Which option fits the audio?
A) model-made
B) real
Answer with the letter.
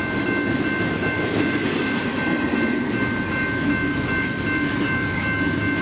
B